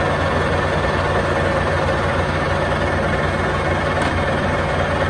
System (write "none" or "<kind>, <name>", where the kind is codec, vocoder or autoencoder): none